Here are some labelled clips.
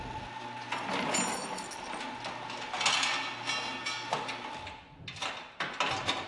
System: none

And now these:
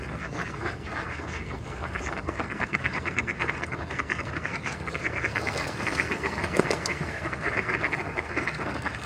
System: codec, SNAC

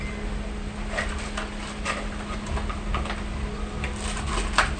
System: none